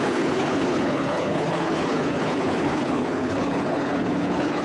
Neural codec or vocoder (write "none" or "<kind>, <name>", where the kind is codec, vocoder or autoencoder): codec, HILCodec